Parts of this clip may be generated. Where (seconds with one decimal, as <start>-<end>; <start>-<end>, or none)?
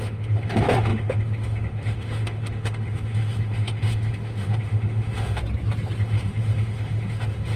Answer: 0.0-5.4; 6.0-7.6